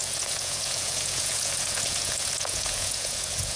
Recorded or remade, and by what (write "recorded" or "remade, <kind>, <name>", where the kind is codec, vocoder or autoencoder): remade, vocoder, Vocos